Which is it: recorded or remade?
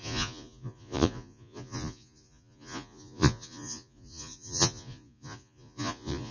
remade